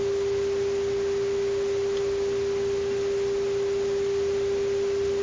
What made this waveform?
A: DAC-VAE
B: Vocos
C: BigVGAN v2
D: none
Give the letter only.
D